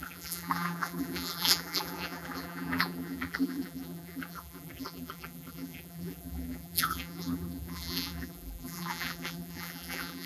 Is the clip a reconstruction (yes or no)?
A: yes